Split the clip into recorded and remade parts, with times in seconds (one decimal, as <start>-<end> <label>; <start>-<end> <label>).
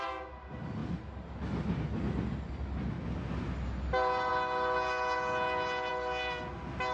0.0-6.9 recorded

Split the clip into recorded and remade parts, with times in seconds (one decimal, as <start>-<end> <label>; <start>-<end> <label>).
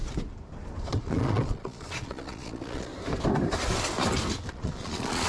0.0-0.8 recorded; 0.8-2.9 remade; 2.9-4.5 recorded; 4.5-5.3 remade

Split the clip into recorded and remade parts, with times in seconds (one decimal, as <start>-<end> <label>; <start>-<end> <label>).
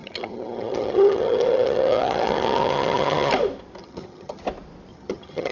0.0-3.3 remade; 3.3-3.8 recorded; 3.8-4.4 remade; 4.4-4.9 recorded; 4.9-5.5 remade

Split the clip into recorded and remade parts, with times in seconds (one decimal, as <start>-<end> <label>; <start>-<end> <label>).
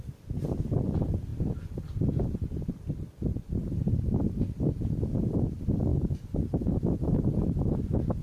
0.0-8.2 recorded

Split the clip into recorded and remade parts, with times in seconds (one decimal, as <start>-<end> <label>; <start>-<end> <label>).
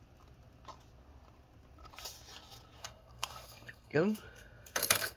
0.0-2.8 recorded; 2.8-5.2 remade